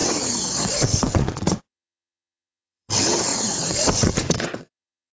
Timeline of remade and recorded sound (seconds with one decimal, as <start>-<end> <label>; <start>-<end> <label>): 0.0-2.9 remade; 2.9-3.3 recorded; 3.3-5.1 remade